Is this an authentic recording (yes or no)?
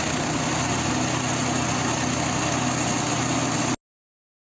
yes